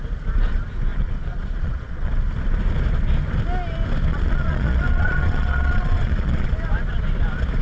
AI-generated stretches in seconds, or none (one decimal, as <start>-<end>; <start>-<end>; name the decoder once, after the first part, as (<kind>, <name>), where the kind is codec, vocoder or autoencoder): 0.9-2.1 (vocoder, Vocos); 4.1-6.5